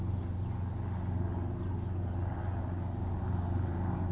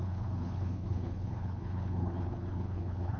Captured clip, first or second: first